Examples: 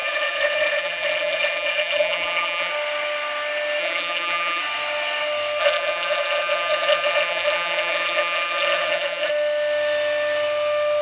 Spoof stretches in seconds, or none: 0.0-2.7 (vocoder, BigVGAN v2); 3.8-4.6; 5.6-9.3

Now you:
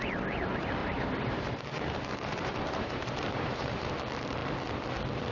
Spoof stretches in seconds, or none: 0.8-3.9 (vocoder, BigVGAN v2)

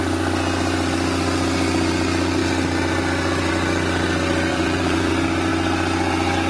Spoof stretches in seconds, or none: 4.5-5.1 (vocoder, BigVGAN v2)

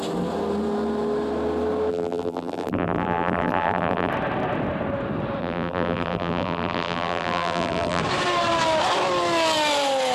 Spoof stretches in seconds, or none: 1.9-4.1 (vocoder, BigVGAN v2); 5.4-8.0

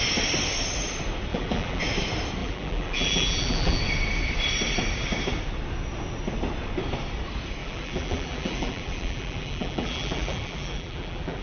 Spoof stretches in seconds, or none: 1.3-1.8 (vocoder, BigVGAN v2); 2.4-3.8; 7.6-11.4